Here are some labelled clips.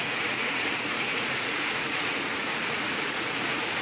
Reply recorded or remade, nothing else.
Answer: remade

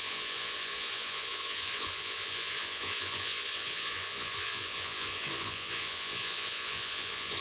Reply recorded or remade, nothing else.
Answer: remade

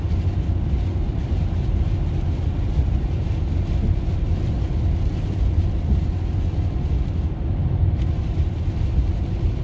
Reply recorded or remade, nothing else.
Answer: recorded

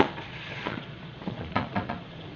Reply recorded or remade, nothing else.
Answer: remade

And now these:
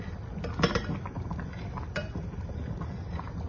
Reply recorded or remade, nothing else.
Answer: recorded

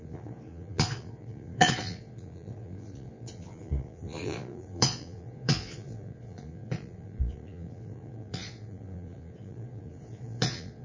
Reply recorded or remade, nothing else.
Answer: remade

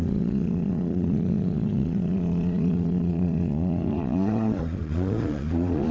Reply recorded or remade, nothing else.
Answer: remade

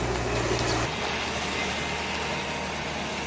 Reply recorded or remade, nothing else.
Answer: recorded